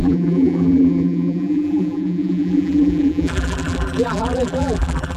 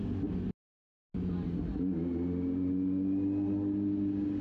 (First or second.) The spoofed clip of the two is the first